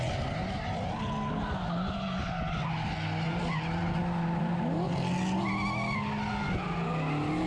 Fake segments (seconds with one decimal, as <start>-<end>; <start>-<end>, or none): none